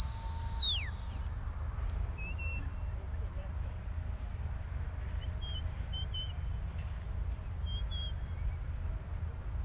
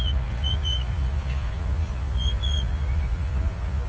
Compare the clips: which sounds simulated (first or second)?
second